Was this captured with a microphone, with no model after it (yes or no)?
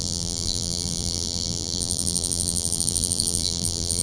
no